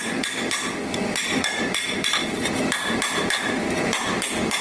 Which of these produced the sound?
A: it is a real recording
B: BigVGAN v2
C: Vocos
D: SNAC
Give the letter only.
A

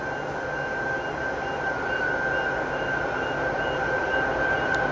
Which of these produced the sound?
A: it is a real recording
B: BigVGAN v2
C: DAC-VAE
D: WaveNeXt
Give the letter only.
A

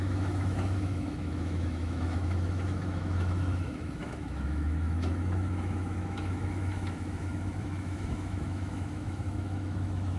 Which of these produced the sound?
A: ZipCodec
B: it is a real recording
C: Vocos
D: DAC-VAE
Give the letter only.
D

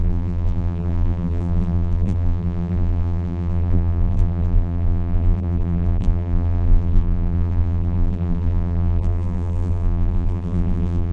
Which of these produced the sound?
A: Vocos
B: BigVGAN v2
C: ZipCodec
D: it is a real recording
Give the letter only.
B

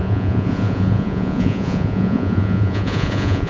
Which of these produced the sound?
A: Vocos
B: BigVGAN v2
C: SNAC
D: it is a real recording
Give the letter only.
A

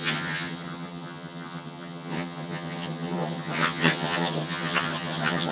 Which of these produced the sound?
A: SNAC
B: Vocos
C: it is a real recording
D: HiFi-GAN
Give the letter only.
D